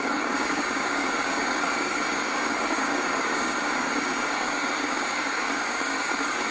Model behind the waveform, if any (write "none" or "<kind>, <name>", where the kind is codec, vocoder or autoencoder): codec, DAC